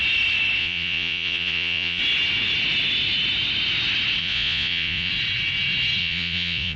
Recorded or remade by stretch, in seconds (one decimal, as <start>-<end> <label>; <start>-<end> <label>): 0.0-0.6 recorded; 0.6-2.0 remade; 2.0-4.2 recorded; 4.2-5.1 remade; 5.1-6.0 recorded; 6.0-6.8 remade